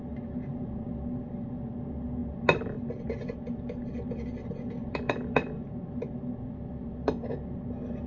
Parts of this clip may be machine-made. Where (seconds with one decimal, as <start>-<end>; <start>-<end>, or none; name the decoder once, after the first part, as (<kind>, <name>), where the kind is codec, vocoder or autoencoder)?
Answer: none